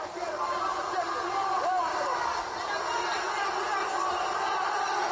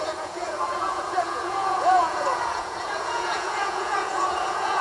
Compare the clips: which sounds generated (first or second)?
second